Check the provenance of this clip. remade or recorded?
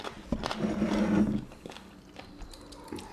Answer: recorded